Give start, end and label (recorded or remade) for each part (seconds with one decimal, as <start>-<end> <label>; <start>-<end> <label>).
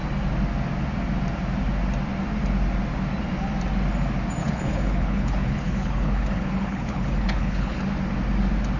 0.0-4.4 recorded; 4.4-7.8 remade; 7.8-8.8 recorded